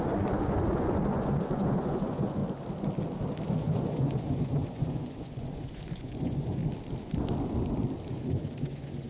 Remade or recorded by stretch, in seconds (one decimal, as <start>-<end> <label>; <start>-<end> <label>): 0.0-2.4 remade; 2.4-3.6 recorded; 3.6-6.6 remade; 6.6-8.1 recorded; 8.1-9.1 remade